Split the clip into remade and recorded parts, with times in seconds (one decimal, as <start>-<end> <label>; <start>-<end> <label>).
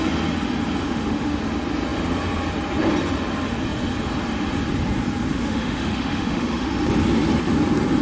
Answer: 0.0-0.8 recorded; 0.8-1.4 remade; 1.4-5.3 recorded; 5.3-6.7 remade; 6.7-8.0 recorded